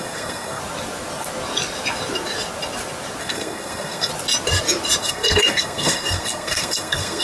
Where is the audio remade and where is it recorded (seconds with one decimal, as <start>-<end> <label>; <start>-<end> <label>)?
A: 0.0-0.6 remade; 0.6-3.2 recorded; 3.2-4.1 remade; 4.1-5.0 recorded; 5.0-7.2 remade

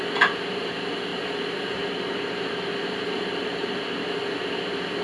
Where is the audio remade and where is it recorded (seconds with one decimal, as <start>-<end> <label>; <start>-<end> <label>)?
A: 0.0-1.1 recorded; 1.1-4.1 remade; 4.1-5.0 recorded

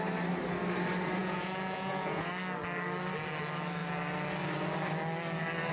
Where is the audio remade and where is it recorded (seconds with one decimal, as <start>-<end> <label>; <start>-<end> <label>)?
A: 0.0-1.2 recorded; 1.2-2.3 remade; 2.3-5.7 recorded

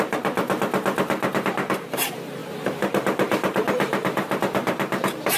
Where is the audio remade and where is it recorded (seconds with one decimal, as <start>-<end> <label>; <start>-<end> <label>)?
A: 0.0-5.4 remade

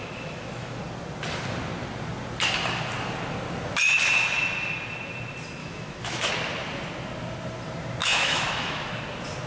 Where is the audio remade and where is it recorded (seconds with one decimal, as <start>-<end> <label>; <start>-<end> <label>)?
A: 0.0-0.8 remade; 0.8-5.6 recorded; 5.6-6.3 remade; 6.3-8.0 recorded; 8.0-8.9 remade; 8.9-9.5 recorded

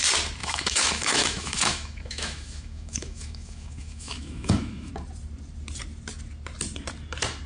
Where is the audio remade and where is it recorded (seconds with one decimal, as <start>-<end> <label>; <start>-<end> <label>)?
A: 0.0-0.4 recorded; 0.4-4.9 remade; 4.9-7.5 recorded

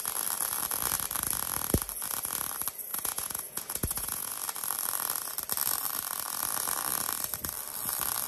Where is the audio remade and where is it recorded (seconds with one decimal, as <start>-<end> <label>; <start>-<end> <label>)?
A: 0.0-2.9 recorded; 2.9-4.3 remade; 4.3-8.3 recorded

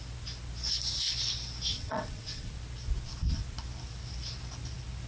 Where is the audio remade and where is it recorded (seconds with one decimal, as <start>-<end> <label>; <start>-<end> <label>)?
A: 0.0-1.7 recorded; 1.7-2.5 remade; 2.5-5.1 recorded